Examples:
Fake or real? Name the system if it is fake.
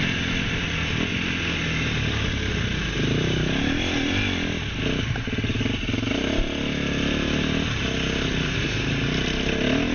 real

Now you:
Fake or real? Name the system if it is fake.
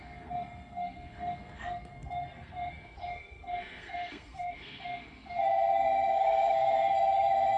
fake, codec, SNAC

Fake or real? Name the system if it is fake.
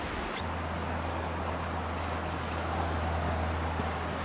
real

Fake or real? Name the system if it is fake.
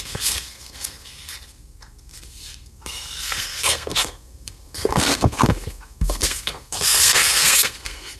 fake, codec, SNAC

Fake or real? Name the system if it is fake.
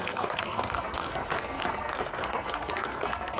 fake, codec, SNAC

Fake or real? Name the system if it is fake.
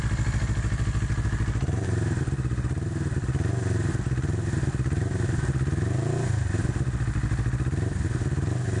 real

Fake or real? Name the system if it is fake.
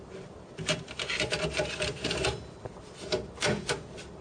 real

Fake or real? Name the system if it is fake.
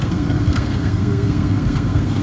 fake, codec, SNAC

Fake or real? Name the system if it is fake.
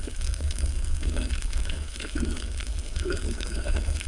fake, codec, SNAC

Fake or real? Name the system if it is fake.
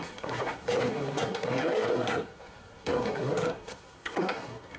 fake, codec, SNAC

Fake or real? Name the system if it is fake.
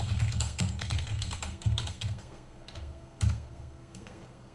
fake, codec, SNAC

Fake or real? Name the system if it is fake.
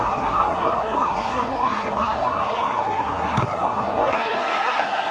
fake, codec, SNAC